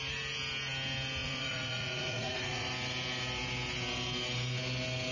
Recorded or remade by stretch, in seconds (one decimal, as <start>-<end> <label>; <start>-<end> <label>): 0.0-1.2 recorded; 1.2-2.7 remade; 2.7-5.1 recorded